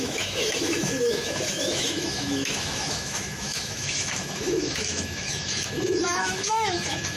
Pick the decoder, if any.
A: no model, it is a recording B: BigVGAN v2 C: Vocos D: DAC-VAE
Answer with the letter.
D